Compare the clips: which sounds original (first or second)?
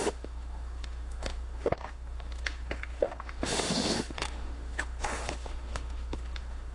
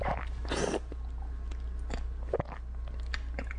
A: second